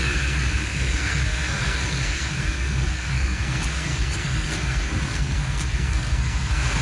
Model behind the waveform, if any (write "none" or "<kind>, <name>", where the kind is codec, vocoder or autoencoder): codec, SNAC